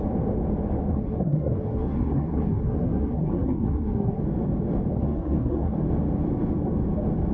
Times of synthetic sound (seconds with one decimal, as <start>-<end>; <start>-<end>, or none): 0.9-4.2; 4.9-5.8

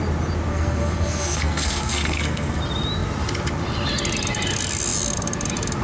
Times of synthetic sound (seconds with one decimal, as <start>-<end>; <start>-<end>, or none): 0.5-2.6

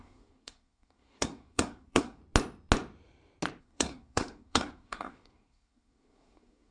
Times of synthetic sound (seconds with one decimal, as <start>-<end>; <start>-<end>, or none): 0.0-2.2; 3.6-6.7